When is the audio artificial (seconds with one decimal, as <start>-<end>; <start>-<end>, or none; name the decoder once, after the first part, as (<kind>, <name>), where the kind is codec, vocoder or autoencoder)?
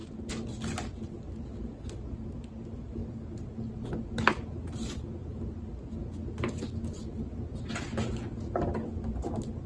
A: none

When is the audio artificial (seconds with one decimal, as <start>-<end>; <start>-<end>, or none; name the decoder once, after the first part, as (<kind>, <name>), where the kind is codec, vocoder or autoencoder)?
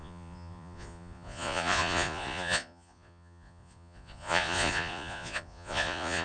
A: 0.0-6.2 (vocoder, Vocos)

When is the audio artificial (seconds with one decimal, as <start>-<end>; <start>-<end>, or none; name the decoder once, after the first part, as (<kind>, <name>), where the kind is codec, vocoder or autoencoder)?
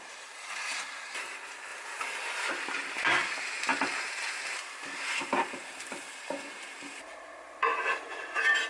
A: 0.0-8.7 (vocoder, BigVGAN v2)